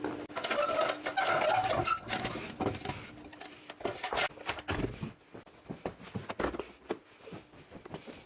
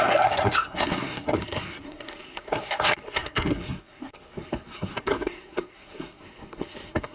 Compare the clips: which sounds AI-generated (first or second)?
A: second